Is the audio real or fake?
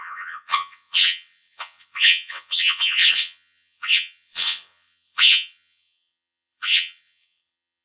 fake